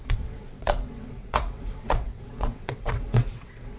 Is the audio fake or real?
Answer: fake